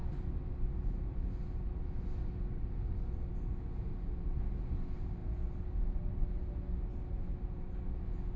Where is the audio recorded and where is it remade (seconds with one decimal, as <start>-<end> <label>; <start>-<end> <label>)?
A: 0.0-8.4 recorded